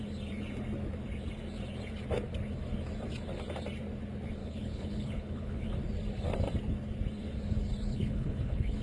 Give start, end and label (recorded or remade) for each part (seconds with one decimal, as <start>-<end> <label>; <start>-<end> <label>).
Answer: 0.0-4.4 recorded; 4.4-5.7 remade; 5.7-7.9 recorded; 7.9-8.8 remade